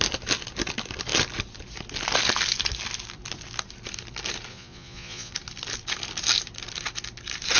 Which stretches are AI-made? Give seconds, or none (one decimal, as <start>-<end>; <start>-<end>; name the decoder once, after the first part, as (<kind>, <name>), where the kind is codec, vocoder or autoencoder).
4.5-5.3 (vocoder, Vocos)

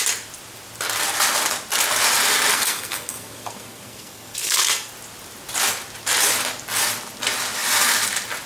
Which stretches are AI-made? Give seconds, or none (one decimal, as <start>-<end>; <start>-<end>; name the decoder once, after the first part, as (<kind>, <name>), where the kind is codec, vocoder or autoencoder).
2.5-4.9 (codec, SNAC)

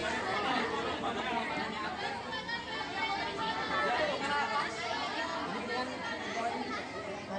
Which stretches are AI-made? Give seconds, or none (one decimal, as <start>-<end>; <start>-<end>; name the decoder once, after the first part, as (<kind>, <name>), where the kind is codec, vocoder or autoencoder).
none

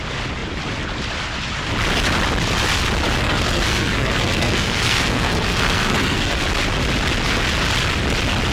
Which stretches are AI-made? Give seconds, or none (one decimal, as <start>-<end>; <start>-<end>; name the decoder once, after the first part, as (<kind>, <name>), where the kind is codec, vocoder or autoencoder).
3.2-6.4 (codec, SNAC)

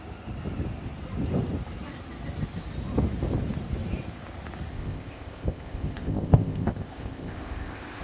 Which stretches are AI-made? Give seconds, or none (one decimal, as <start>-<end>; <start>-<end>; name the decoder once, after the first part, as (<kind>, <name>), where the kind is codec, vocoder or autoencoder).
4.7-8.0 (codec, ZipCodec)